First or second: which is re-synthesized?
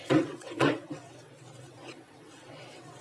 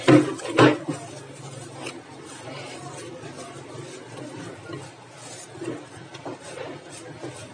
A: first